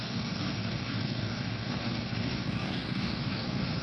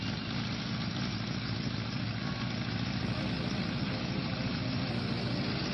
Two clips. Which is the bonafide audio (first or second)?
second